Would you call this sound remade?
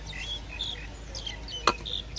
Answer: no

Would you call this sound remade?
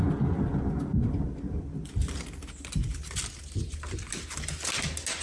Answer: no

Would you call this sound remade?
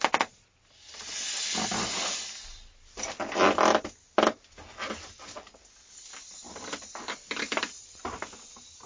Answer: no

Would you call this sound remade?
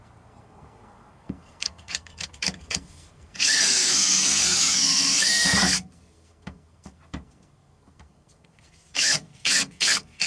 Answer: yes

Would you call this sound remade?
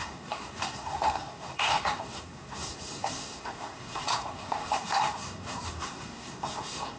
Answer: yes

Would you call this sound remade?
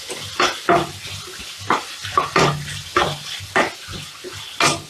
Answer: no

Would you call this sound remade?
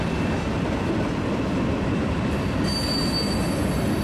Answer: no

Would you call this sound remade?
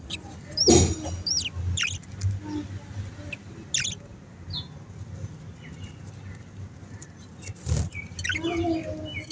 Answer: no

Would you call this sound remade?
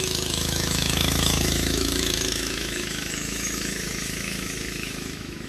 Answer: yes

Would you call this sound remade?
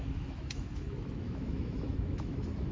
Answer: yes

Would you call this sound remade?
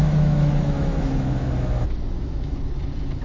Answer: yes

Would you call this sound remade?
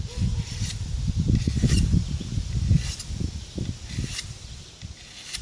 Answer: no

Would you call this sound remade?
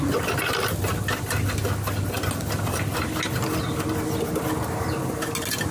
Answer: no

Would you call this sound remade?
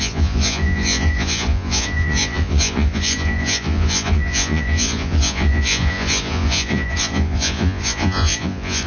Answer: yes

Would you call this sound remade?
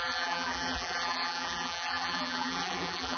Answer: yes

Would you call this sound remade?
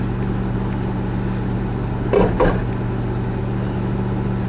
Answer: no